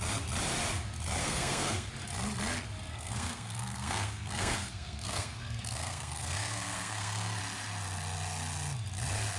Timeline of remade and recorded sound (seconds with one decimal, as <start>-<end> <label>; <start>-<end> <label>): 0.0-1.2 recorded; 1.2-1.9 remade; 1.9-2.9 recorded; 2.9-7.4 remade; 7.4-9.4 recorded